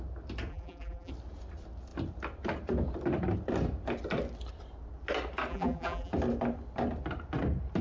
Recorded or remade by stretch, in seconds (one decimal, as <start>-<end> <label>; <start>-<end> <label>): 0.0-0.5 recorded; 0.5-1.1 remade; 1.1-5.5 recorded; 5.5-6.1 remade; 6.1-7.8 recorded